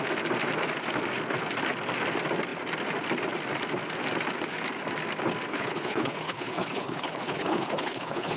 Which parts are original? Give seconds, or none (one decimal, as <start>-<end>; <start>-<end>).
0.0-5.5